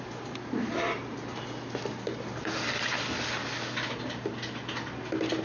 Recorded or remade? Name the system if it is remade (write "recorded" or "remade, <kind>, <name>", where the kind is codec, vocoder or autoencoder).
recorded